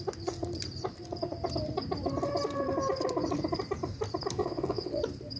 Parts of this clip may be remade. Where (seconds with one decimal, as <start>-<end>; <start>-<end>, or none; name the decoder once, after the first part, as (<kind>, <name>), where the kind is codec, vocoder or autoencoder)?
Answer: 4.4-5.0 (vocoder, WaveNeXt)